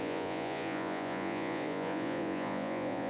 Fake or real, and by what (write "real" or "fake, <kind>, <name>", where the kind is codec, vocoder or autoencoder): fake, vocoder, Vocos